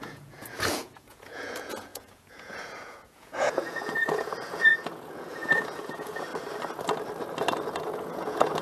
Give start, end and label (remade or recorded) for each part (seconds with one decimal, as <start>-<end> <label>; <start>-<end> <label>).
0.0-6.3 remade; 6.3-7.7 recorded; 7.7-8.6 remade